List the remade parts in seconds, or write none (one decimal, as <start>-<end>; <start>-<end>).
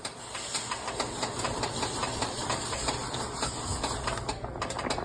none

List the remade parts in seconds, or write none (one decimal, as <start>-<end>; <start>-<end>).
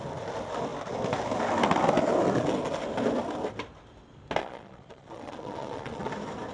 4.4-6.1